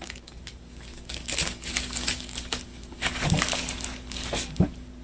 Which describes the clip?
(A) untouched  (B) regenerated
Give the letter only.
B